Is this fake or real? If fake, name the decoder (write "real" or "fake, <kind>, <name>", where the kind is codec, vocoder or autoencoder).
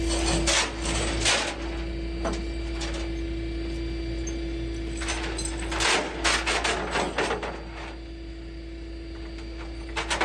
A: real